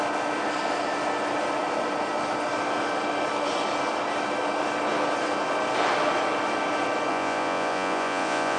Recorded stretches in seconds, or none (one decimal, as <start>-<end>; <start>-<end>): 0.0-7.1